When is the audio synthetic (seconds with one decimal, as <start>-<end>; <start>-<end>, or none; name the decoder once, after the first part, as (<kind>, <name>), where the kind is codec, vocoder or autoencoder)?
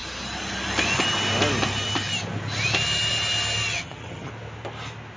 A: 3.7-4.3 (vocoder, HiFi-GAN)